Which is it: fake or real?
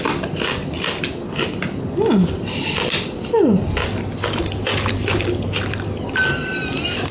real